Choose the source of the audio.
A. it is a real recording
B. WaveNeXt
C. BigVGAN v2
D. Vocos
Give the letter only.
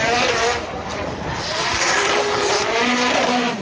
C